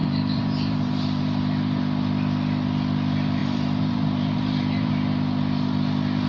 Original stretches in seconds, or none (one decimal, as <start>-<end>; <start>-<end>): 1.8-3.4; 4.9-6.3